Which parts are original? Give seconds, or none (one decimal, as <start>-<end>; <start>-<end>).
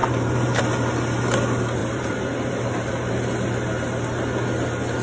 0.6-1.8; 3.1-5.0